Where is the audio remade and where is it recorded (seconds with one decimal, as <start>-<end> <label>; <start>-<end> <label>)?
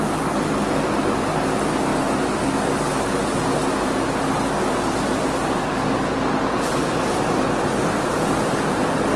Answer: 0.0-9.2 recorded